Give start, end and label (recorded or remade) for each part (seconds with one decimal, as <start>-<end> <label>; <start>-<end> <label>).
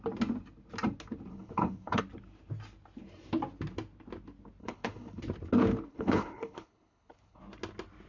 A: 0.0-1.3 recorded; 1.3-2.0 remade; 2.0-4.6 recorded; 4.6-5.2 remade; 5.2-5.9 recorded; 5.9-7.4 remade; 7.4-8.1 recorded